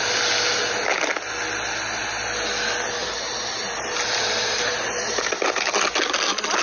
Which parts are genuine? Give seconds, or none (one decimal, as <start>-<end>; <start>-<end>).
0.0-3.0; 5.3-6.6